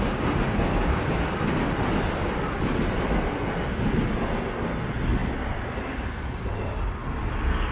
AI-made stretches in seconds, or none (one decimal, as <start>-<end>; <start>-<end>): 0.7-1.2